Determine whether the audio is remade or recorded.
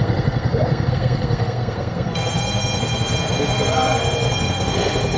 remade